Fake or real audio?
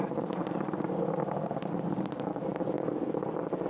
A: fake